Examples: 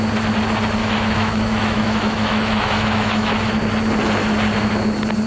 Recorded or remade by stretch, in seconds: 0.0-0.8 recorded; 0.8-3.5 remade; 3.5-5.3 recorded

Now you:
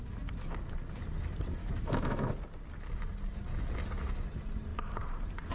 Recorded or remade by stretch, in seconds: 0.0-1.6 recorded; 1.6-2.3 remade; 2.3-5.5 recorded

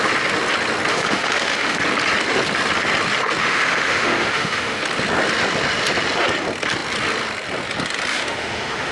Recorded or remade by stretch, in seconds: 0.0-0.9 recorded; 0.9-1.8 remade; 1.8-3.4 recorded; 3.4-4.8 remade; 4.8-8.1 recorded; 8.1-8.9 remade

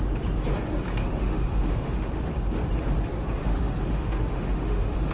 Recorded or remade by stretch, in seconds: 0.0-0.9 recorded; 0.9-2.3 remade; 2.3-3.4 recorded; 3.4-5.1 remade

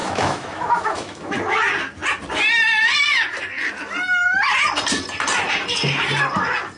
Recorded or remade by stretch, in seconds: 0.0-1.3 remade; 1.3-6.8 recorded

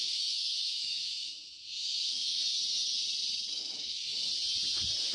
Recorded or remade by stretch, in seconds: 0.0-2.4 remade; 2.4-3.5 recorded; 3.5-4.3 remade; 4.3-5.1 recorded

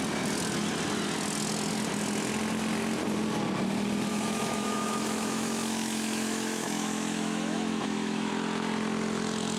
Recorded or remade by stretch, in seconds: 0.0-4.1 recorded; 4.1-8.3 remade; 8.3-9.6 recorded